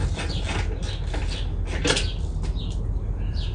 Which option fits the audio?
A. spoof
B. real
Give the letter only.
B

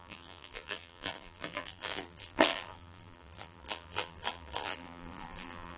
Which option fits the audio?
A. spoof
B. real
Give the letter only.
A